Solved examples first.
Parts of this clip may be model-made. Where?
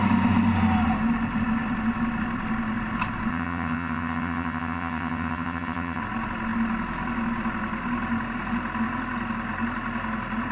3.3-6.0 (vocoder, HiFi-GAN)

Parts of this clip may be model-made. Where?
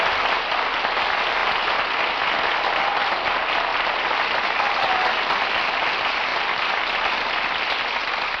3.7-4.9 (vocoder, BigVGAN v2)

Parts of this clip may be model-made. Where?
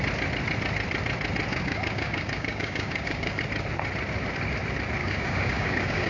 1.5-3.4 (codec, DAC); 5.0-6.1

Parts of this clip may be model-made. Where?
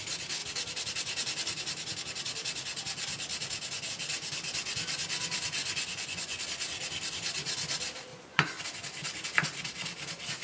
5.6-6.4 (vocoder, Vocos); 8.1-8.6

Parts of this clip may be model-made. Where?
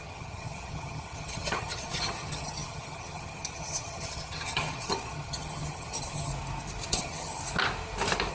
0.0-6.3 (vocoder, HiFi-GAN); 6.9-7.4